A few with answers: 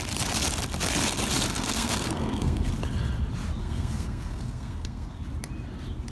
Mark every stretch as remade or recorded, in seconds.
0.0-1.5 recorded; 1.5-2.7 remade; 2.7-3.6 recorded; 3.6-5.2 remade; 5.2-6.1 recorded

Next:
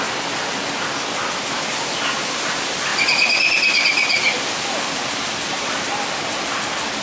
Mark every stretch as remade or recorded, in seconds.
0.0-7.0 recorded

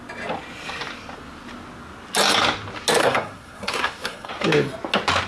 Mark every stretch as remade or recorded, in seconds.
0.0-3.0 recorded; 3.0-4.3 remade; 4.3-5.3 recorded

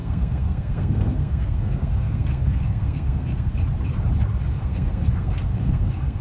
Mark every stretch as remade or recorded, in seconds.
0.0-3.5 remade; 3.5-4.5 recorded; 4.5-6.2 remade

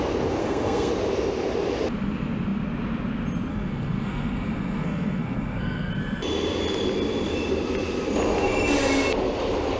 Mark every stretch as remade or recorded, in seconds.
0.0-0.4 recorded; 0.4-0.9 remade; 0.9-3.5 recorded; 3.5-5.9 remade; 5.9-9.8 recorded

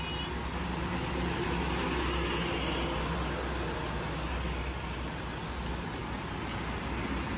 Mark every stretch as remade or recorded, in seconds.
0.0-7.4 recorded

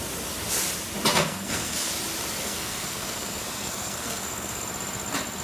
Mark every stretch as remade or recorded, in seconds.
0.0-1.1 recorded; 1.1-1.9 remade; 1.9-2.4 recorded; 2.4-4.6 remade; 4.6-5.4 recorded

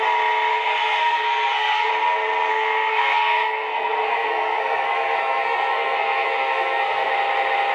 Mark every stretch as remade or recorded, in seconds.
0.0-0.5 recorded; 0.5-1.9 remade; 1.9-2.5 recorded; 2.5-7.1 remade; 7.1-7.7 recorded